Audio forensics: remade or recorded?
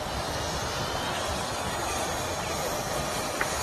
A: recorded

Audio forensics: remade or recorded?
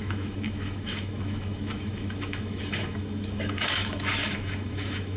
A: remade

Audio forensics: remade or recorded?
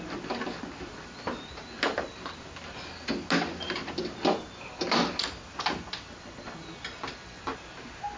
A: recorded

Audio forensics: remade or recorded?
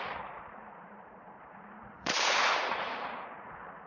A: remade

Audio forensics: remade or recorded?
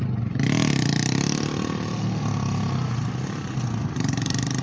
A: recorded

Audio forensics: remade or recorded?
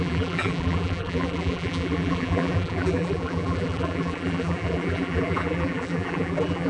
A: remade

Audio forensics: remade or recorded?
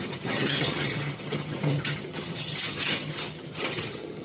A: remade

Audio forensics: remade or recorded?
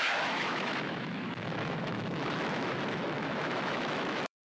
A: remade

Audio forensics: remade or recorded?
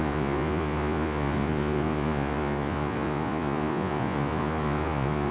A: remade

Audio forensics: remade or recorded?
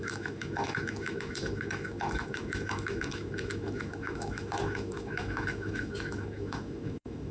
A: remade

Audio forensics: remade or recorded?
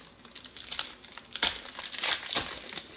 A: recorded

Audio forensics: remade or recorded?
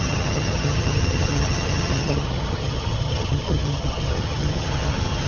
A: remade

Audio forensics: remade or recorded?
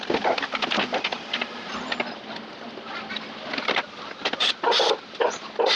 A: recorded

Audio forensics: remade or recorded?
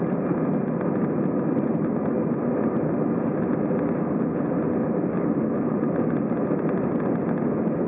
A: recorded